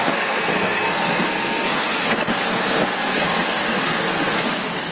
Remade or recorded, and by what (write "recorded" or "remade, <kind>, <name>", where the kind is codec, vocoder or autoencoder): remade, codec, SNAC